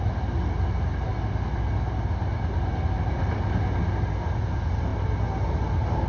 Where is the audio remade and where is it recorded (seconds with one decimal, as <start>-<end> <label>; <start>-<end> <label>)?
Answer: 0.0-6.1 recorded